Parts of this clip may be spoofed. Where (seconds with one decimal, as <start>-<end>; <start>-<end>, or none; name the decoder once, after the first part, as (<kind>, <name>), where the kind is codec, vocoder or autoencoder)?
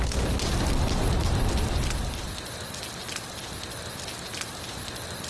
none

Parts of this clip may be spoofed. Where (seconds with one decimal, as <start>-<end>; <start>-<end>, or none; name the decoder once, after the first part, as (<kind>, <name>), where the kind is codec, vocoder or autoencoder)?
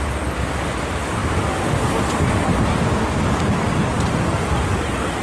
none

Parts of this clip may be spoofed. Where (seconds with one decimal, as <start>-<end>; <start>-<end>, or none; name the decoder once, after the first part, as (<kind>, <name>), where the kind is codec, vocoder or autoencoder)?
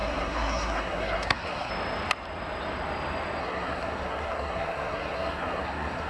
0.0-1.7 (codec, SNAC); 3.4-6.1